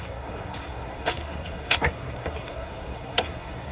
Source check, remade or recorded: remade